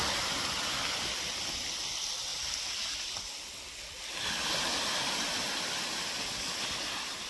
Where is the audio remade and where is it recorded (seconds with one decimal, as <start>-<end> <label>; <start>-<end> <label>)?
0.0-7.3 recorded